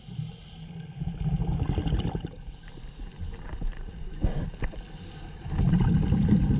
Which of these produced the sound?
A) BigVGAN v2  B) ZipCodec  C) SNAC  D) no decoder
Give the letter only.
D